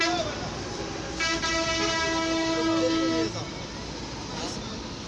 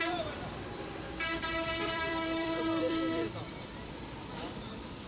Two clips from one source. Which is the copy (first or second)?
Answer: second